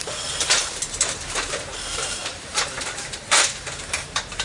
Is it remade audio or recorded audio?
remade